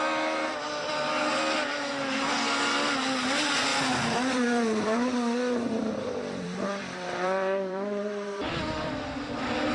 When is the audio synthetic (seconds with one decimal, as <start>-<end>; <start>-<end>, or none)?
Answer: 3.7-8.6